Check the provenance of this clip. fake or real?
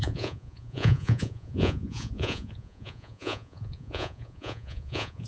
fake